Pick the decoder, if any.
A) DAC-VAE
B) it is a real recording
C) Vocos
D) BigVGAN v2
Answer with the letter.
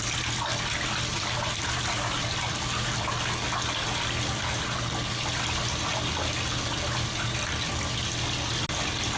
B